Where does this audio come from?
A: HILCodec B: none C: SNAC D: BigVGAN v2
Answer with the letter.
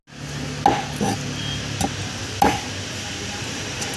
B